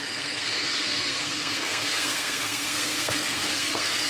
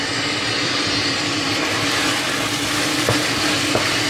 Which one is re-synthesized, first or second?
first